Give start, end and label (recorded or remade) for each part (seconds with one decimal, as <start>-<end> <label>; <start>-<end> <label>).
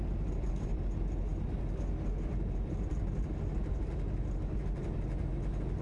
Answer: 0.0-5.8 recorded